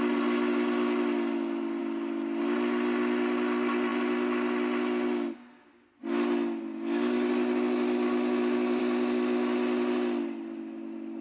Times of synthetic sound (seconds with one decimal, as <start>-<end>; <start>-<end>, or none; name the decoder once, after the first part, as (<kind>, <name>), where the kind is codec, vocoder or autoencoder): none